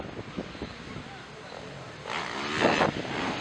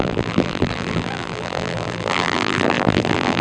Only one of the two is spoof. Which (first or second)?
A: second